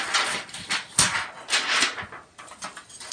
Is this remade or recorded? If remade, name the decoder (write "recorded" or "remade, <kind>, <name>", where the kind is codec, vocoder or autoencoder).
recorded